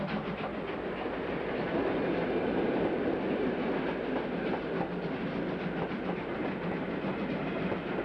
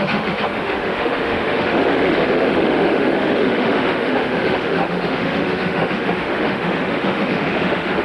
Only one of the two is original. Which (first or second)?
first